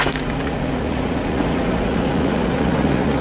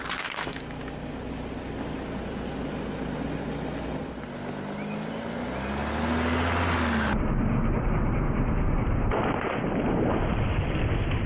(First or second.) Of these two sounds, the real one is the second